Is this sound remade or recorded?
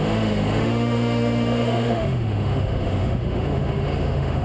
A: remade